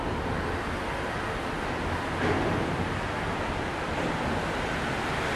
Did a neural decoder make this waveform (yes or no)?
no